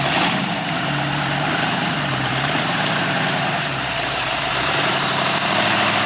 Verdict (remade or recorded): remade